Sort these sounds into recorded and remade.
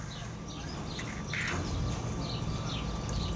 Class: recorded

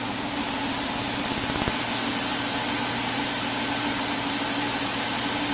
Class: recorded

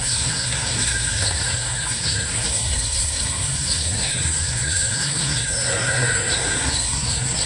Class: remade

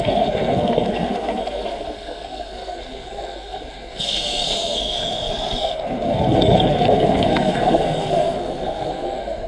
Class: remade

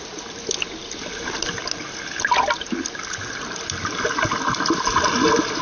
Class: recorded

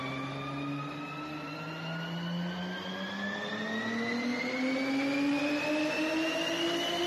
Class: recorded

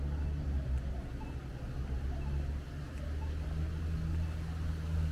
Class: recorded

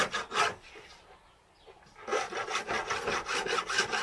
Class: recorded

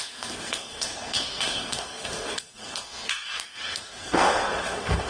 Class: remade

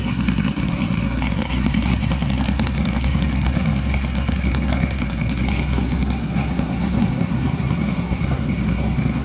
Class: remade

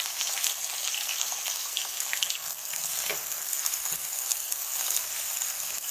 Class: remade